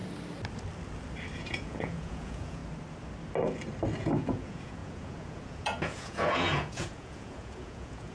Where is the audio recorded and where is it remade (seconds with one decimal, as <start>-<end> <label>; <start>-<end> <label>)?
0.0-1.4 recorded; 1.4-2.6 remade; 2.6-4.0 recorded; 4.0-8.1 remade